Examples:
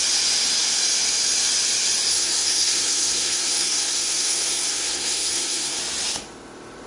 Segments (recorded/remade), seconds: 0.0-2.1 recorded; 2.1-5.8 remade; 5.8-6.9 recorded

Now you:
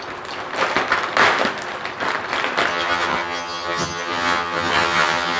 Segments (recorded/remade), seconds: 0.0-2.7 recorded; 2.7-5.4 remade

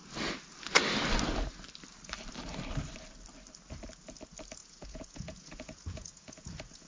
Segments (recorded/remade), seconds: 0.0-4.6 recorded; 4.6-6.9 remade